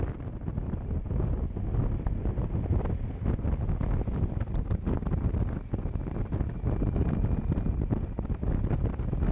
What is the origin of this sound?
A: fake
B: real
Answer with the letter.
B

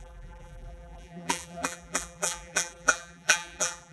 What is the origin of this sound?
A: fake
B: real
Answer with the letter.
A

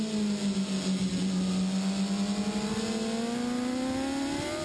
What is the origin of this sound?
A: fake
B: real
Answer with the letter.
B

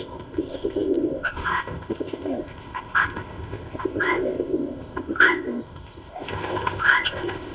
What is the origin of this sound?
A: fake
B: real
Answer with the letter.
A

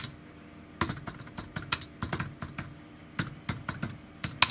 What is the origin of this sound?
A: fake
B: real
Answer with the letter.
B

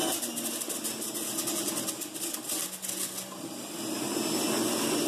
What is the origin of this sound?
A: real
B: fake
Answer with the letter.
A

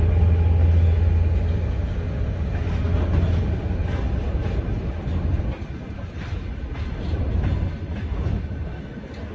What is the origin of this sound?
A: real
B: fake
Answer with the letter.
A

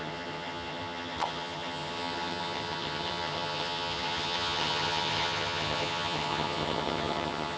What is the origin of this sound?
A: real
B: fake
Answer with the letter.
B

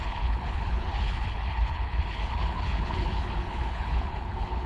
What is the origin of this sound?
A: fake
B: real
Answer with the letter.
A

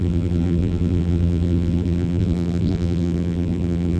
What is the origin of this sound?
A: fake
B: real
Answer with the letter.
A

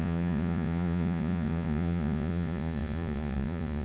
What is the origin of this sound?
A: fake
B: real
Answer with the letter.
A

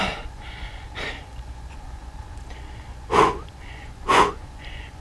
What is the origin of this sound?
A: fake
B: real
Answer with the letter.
A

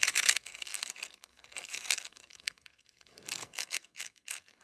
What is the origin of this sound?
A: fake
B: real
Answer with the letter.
A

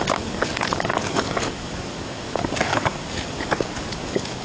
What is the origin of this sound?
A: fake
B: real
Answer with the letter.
A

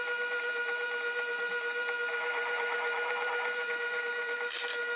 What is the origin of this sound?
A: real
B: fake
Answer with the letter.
B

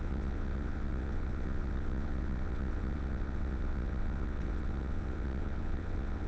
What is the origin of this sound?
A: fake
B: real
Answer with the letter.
A